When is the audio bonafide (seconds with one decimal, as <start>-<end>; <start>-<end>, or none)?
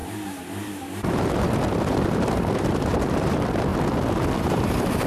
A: 3.7-4.4